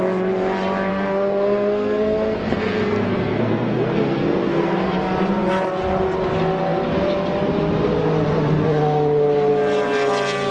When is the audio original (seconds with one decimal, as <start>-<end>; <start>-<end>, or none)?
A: 0.0-0.9; 4.9-10.5